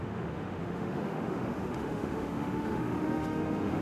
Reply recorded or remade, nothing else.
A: remade